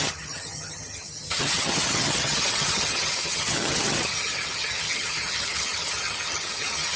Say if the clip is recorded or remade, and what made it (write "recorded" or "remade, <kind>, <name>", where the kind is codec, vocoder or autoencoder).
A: remade, vocoder, HiFi-GAN